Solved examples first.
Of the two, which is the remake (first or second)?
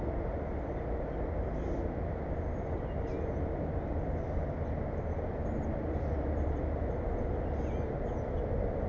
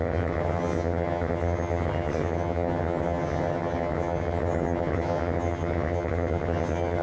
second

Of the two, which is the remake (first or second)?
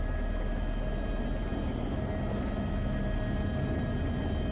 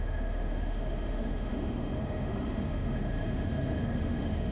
second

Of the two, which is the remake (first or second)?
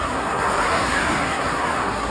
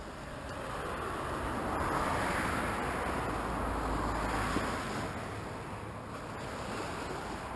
first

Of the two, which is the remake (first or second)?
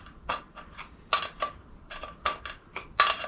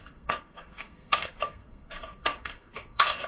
second